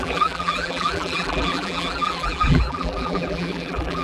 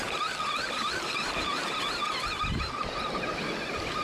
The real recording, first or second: second